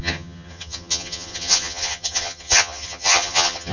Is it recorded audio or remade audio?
remade